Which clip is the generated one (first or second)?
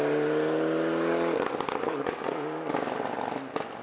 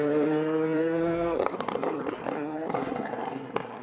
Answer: second